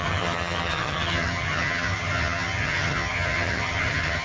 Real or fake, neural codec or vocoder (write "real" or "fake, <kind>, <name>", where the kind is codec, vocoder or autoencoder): fake, vocoder, HiFi-GAN